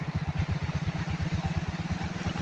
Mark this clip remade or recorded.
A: recorded